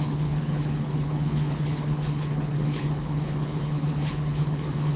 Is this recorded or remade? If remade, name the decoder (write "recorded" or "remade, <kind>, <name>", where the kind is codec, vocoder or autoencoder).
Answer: remade, codec, HILCodec